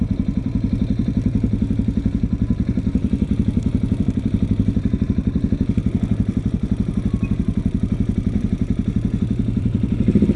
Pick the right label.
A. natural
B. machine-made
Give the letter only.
B